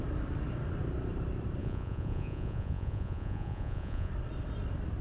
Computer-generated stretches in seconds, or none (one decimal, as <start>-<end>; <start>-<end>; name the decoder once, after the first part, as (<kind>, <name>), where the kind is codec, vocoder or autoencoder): 1.6-4.1 (vocoder, Vocos)